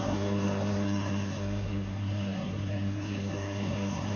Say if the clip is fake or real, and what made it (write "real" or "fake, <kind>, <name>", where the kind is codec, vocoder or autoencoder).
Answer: fake, codec, SNAC